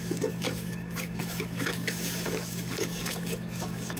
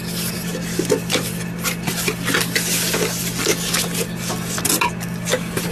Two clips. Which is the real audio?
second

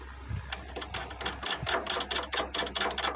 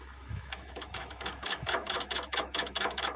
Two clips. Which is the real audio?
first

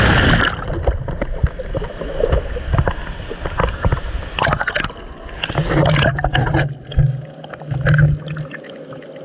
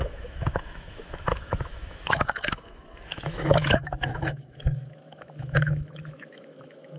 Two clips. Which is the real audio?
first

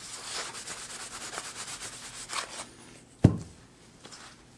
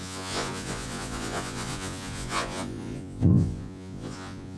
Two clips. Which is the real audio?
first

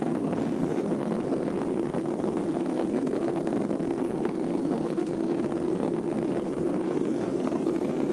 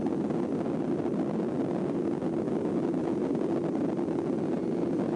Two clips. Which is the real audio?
second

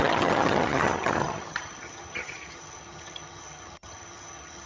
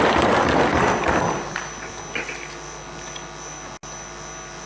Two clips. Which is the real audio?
second